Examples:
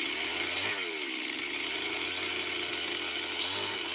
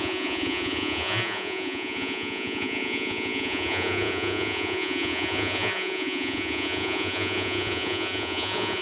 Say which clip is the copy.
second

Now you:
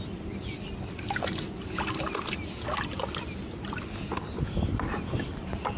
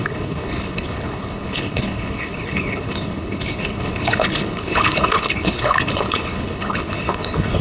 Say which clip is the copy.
second